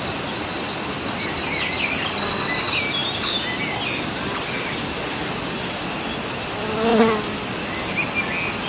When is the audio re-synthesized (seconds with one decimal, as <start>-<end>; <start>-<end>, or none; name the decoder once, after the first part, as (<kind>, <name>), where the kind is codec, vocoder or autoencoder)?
none